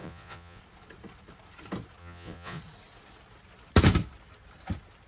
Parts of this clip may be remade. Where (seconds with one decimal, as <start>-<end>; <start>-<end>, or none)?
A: 0.0-0.6; 2.0-2.6